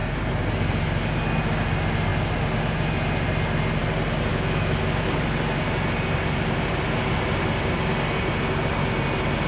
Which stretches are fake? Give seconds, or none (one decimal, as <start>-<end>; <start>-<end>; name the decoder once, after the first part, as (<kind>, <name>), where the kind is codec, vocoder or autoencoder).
4.3-4.8 (autoencoder, DAC-VAE)